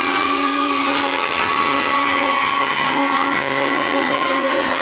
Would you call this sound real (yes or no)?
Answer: no